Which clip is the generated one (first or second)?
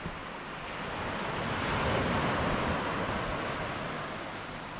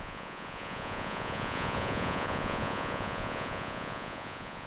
second